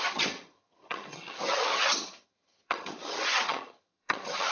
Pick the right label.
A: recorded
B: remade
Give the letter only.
B